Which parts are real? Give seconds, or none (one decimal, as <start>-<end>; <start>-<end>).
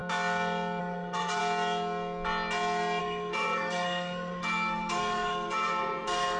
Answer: 0.0-0.8; 1.4-3.0